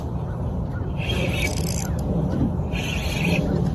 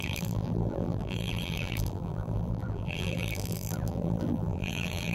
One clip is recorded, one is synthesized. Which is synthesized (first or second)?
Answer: second